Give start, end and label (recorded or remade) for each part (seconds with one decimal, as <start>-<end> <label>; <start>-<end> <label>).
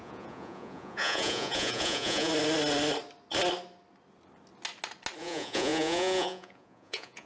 0.0-2.3 remade; 2.3-5.2 recorded; 5.2-7.3 remade